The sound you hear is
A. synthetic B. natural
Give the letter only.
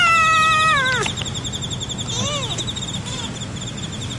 B